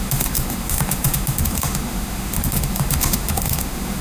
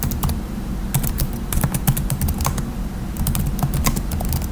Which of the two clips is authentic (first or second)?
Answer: second